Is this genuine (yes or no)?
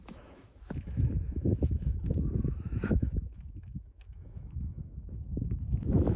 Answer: no